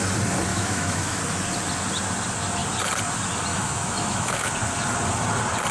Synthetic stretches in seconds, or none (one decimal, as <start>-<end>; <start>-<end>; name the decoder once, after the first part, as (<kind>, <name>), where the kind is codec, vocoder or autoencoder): 0.5-1.2 (autoencoder, DAC-VAE); 3.5-4.5